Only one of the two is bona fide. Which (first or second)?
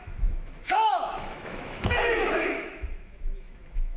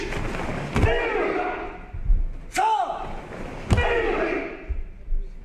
second